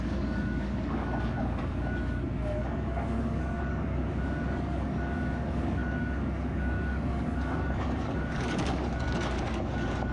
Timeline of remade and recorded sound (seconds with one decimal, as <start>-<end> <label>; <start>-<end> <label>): 0.0-10.1 remade